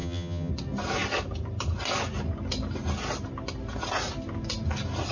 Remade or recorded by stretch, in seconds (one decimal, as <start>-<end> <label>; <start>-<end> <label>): 0.0-0.5 remade; 0.5-5.1 recorded

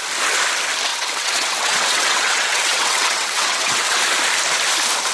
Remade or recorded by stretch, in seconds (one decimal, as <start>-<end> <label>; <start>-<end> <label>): 0.0-0.9 recorded; 0.9-4.0 remade; 4.0-5.1 recorded

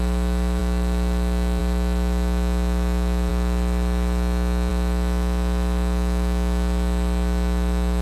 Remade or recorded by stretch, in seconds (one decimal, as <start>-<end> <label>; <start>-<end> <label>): 0.0-8.0 remade

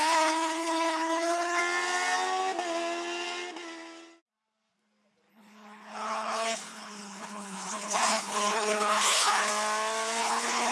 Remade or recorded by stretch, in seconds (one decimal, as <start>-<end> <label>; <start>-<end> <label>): 0.0-1.6 remade; 1.6-5.3 recorded; 5.3-9.5 remade; 9.5-10.2 recorded; 10.2-10.7 remade

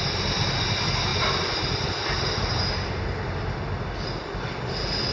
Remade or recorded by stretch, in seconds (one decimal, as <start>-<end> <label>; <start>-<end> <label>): 0.0-5.1 recorded